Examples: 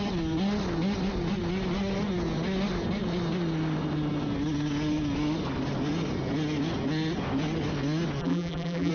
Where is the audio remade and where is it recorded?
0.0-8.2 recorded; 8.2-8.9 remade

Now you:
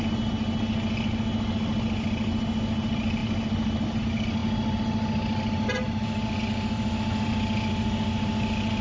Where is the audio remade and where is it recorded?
0.0-8.8 recorded

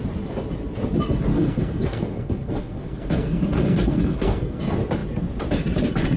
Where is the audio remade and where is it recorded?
0.0-1.3 recorded; 1.3-4.6 remade; 4.6-6.2 recorded

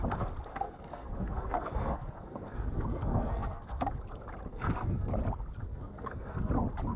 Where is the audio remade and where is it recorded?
0.0-0.5 recorded; 0.5-3.9 remade; 3.9-4.5 recorded; 4.5-5.1 remade; 5.1-5.7 recorded; 5.7-6.5 remade; 6.5-7.0 recorded

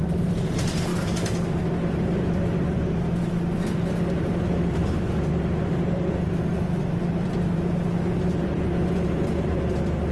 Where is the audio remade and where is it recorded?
0.0-0.9 remade; 0.9-1.6 recorded; 1.6-10.1 remade

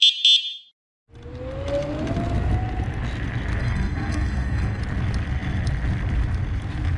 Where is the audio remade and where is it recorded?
0.0-3.6 recorded; 3.6-4.8 remade; 4.8-7.0 recorded

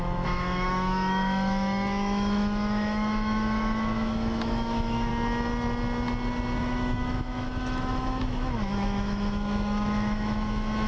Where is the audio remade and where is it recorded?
0.0-5.1 remade; 5.1-6.6 recorded; 6.6-10.9 remade